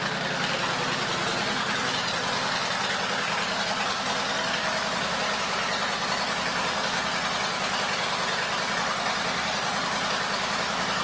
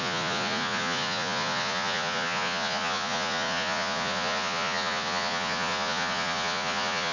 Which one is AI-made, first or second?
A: second